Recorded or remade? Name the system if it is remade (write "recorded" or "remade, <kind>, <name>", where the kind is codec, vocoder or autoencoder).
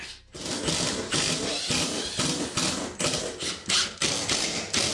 recorded